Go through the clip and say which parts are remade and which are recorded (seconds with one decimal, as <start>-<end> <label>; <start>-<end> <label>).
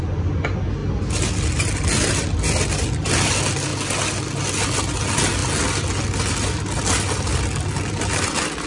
0.0-8.7 recorded